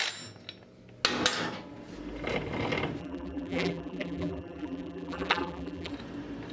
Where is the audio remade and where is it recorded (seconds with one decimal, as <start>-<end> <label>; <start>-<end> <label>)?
0.0-3.0 recorded; 3.0-5.9 remade; 5.9-6.5 recorded